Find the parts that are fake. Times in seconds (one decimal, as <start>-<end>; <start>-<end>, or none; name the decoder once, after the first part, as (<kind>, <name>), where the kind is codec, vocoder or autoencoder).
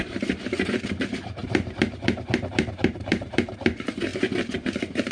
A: 0.0-1.4 (vocoder, BigVGAN v2); 2.5-4.1